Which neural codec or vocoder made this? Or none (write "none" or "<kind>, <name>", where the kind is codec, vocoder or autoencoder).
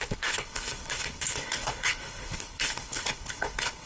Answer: codec, HILCodec